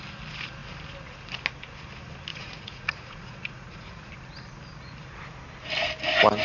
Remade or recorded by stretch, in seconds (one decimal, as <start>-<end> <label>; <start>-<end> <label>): 0.0-2.3 recorded; 2.3-4.1 remade; 4.1-6.4 recorded